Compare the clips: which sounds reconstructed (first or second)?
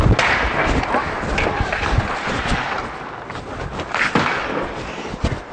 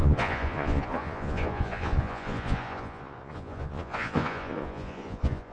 second